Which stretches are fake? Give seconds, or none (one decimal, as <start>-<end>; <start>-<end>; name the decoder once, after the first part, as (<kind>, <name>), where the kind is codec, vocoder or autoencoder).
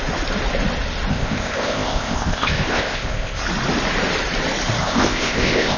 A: 1.1-3.4 (codec, ZipCodec); 4.8-5.8